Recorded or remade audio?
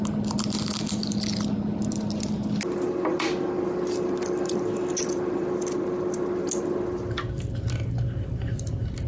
recorded